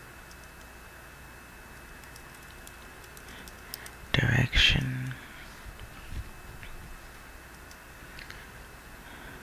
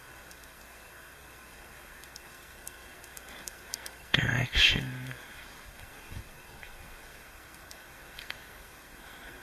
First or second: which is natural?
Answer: first